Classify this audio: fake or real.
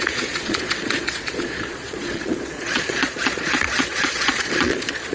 fake